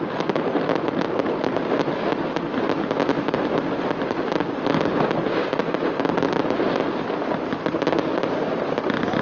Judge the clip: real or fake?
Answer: real